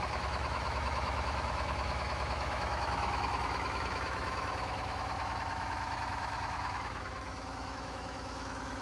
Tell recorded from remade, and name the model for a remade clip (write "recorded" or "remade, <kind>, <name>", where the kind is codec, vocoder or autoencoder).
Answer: remade, autoencoder, DAC-VAE